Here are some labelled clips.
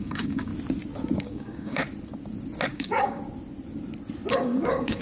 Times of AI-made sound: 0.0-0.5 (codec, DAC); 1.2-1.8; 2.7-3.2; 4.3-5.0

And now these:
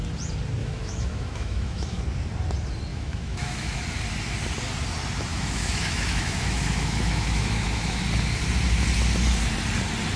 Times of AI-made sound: 0.6-2.0 (autoencoder, DAC-VAE); 2.9-3.8; 5.3-8.0